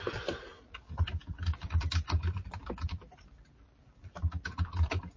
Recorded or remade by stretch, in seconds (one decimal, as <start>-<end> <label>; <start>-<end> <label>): 0.0-5.2 recorded